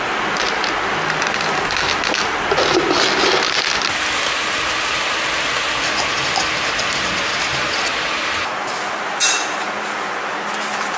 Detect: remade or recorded recorded